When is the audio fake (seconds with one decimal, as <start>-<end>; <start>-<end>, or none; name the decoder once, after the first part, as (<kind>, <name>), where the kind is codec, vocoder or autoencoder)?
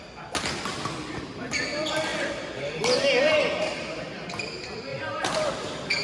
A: none